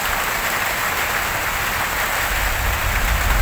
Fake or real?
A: real